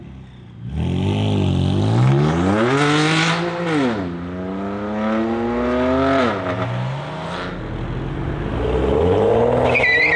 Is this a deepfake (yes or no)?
no